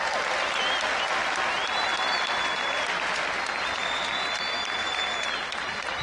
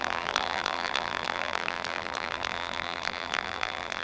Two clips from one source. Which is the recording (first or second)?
first